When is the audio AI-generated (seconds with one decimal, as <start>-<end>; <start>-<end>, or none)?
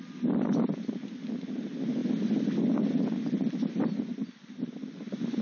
none